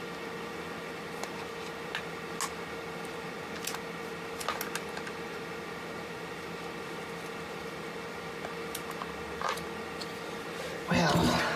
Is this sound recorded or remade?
recorded